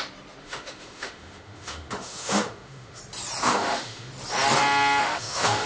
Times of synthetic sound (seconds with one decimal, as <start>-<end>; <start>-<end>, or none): 0.4-3.0; 3.4-4.1; 5.0-5.7